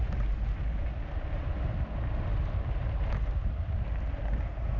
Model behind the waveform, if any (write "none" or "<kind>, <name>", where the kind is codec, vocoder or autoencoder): none